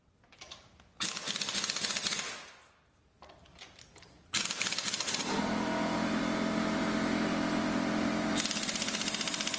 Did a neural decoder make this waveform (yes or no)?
no